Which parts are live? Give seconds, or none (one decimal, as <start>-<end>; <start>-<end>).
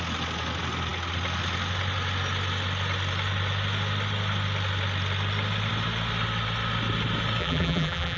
0.0-7.4